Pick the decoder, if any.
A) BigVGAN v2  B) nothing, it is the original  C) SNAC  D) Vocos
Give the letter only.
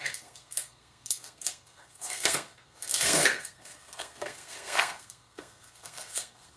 C